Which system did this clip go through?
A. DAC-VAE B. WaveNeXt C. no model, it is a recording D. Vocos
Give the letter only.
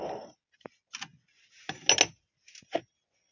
C